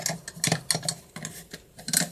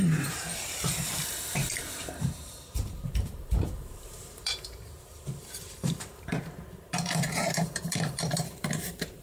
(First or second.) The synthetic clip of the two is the second